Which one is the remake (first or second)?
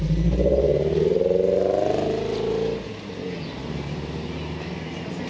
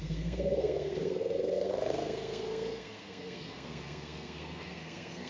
second